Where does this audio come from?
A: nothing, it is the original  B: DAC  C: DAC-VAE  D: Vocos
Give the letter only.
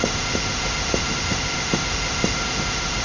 C